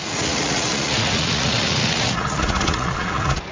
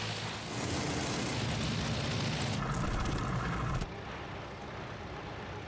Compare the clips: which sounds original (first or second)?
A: second